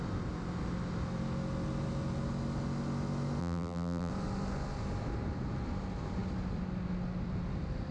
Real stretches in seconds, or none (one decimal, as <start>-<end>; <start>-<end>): 0.0-3.4; 4.1-7.9